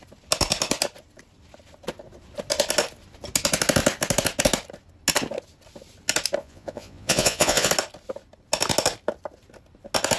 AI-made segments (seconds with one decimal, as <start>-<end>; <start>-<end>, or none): 6.4-7.7